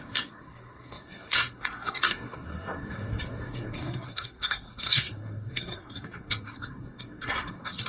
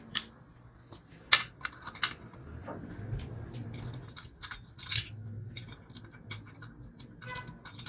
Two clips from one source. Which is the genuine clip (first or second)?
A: second